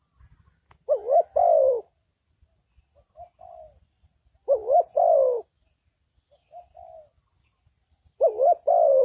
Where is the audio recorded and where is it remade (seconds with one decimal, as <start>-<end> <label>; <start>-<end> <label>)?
0.0-9.0 recorded

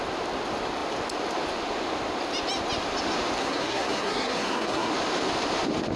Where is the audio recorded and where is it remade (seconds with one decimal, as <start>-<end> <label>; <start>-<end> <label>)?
0.0-3.4 recorded; 3.4-4.9 remade; 4.9-6.0 recorded